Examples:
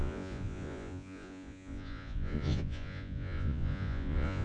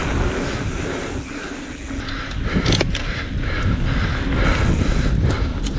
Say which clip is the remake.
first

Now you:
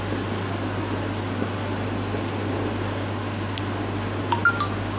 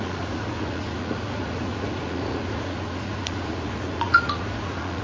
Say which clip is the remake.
second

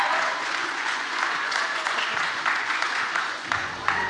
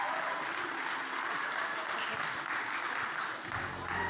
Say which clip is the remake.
first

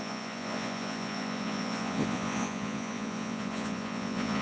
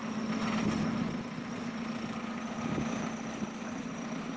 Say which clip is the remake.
first